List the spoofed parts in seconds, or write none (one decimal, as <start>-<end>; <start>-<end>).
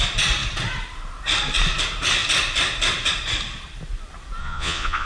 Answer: 4.4-5.1